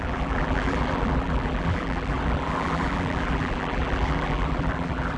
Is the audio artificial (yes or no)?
yes